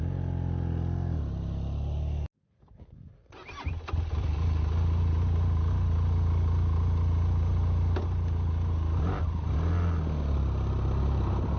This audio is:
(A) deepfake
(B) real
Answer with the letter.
B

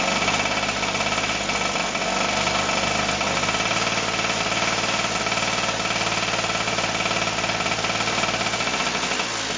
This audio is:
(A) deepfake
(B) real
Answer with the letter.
B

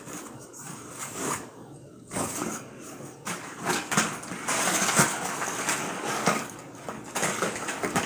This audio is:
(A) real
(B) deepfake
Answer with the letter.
B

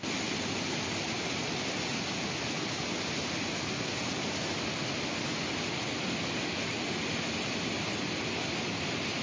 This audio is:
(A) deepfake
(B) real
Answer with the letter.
B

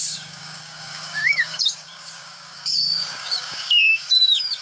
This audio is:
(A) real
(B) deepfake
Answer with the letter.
B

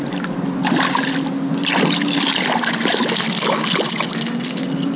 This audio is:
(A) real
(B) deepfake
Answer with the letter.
A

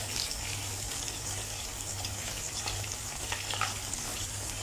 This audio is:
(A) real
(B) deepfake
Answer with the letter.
B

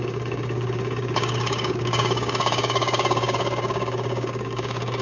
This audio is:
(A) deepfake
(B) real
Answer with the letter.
A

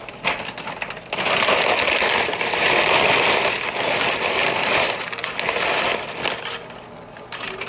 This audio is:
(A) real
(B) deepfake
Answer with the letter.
A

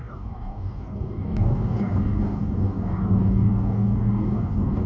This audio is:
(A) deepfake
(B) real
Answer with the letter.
A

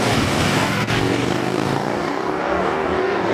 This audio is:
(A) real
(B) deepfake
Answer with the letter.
B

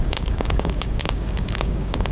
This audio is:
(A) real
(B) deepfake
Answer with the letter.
B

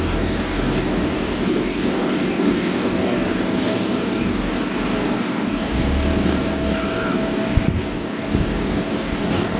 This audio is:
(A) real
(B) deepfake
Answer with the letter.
B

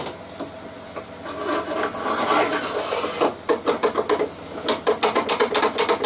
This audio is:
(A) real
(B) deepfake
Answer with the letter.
A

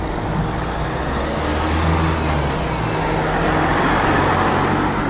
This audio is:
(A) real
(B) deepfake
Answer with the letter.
A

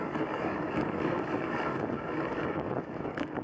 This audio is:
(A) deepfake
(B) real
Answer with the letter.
A